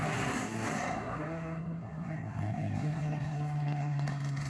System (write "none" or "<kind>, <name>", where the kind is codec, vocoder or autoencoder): codec, SNAC